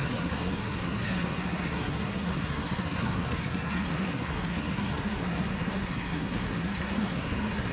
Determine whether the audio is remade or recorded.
remade